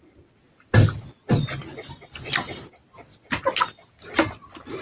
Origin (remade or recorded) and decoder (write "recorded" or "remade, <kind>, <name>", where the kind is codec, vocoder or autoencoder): recorded